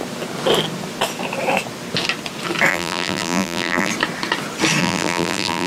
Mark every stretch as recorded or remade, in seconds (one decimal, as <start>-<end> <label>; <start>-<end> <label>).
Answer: 0.0-2.7 recorded; 2.7-3.9 remade; 3.9-4.8 recorded; 4.8-5.7 remade